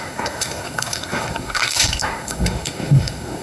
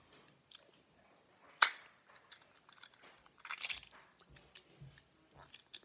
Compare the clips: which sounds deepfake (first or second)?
first